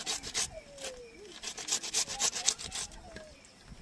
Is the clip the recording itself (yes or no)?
yes